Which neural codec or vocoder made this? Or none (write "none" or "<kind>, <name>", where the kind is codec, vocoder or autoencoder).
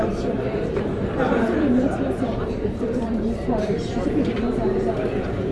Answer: vocoder, BigVGAN v2